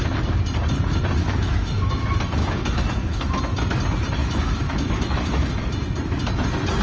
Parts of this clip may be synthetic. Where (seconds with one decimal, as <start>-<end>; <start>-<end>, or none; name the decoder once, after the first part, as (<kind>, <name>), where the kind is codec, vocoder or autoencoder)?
1.2-1.9 (autoencoder, DAC-VAE); 2.4-3.4; 4.2-5.6